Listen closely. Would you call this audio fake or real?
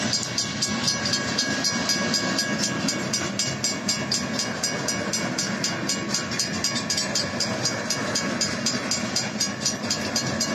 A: real